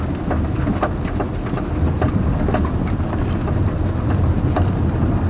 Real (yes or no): yes